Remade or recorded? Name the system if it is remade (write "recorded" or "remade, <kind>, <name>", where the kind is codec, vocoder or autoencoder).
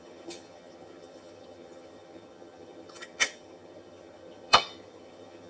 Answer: remade, vocoder, HiFi-GAN